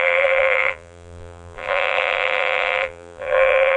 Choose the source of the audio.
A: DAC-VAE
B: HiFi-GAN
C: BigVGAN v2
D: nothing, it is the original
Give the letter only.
C